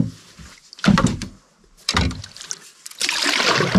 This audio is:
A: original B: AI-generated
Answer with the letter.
A